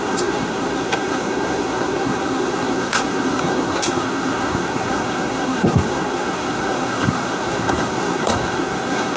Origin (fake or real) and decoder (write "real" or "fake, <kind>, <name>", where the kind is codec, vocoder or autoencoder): fake, codec, SNAC